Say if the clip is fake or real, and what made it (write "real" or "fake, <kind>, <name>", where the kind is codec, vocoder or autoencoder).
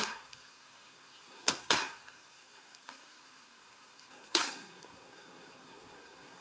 fake, codec, SNAC